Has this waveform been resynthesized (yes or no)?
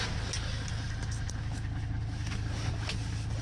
no